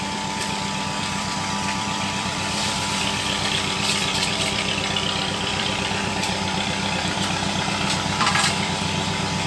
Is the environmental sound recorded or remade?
remade